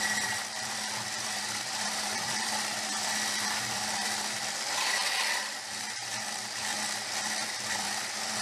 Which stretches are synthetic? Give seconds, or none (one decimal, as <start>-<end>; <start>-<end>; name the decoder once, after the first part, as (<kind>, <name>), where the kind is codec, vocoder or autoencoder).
0.0-6.7 (vocoder, BigVGAN v2); 7.2-8.4